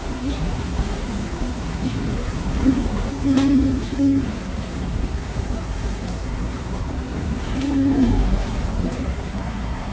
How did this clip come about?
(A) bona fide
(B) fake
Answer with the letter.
B